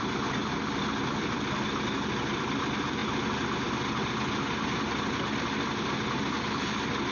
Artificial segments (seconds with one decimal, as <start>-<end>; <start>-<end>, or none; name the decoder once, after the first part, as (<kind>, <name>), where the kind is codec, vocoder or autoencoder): none